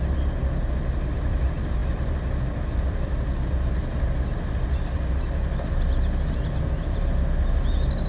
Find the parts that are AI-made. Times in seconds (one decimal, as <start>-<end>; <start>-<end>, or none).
none